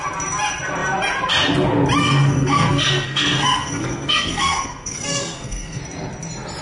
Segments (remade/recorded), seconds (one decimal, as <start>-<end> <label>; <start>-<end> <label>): 0.0-2.0 recorded; 2.0-5.8 remade; 5.8-6.6 recorded